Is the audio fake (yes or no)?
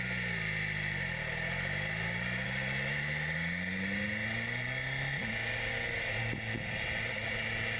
no